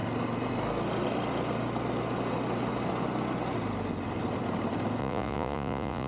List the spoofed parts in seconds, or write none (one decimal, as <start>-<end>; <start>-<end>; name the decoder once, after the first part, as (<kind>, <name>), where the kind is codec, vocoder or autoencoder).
5.0-6.1 (vocoder, Vocos)